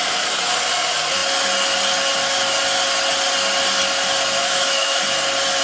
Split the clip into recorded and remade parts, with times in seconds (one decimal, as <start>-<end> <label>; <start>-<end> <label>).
0.0-4.4 recorded; 4.4-5.0 remade; 5.0-5.6 recorded